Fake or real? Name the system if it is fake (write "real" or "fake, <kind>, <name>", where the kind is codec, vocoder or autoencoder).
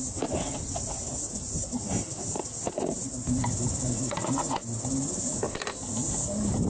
real